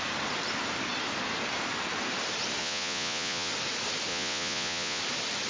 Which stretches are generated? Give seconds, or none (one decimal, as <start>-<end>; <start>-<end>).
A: 2.6-3.5; 4.1-5.0